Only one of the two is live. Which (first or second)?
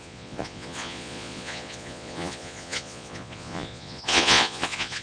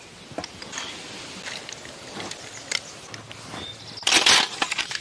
second